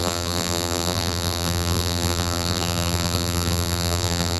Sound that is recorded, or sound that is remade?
remade